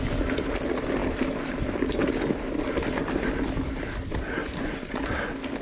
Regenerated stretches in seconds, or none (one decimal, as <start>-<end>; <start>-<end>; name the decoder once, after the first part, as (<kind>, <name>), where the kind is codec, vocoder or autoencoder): 4.4-5.0 (vocoder, Vocos)